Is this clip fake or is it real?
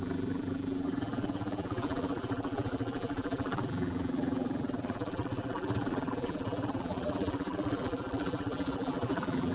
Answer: fake